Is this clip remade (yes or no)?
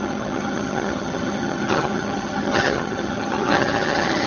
yes